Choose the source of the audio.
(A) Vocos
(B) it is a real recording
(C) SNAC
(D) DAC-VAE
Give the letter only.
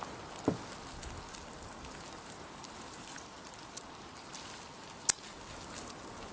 B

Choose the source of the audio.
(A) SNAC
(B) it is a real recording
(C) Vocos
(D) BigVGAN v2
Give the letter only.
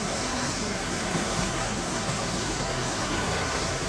A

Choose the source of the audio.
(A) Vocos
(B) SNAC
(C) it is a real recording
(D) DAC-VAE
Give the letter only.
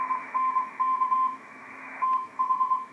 D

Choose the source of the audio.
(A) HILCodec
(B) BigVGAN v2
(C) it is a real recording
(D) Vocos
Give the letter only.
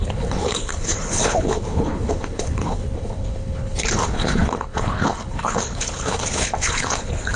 A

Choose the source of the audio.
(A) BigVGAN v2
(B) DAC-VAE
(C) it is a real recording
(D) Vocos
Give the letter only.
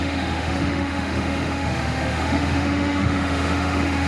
B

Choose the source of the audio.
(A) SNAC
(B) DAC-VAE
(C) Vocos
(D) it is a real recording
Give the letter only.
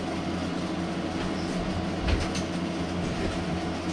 D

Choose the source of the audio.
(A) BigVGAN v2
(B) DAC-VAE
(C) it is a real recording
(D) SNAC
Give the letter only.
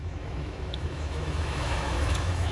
B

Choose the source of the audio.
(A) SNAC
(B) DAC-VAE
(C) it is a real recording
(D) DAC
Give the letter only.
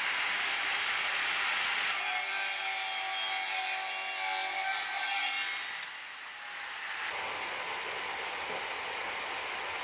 C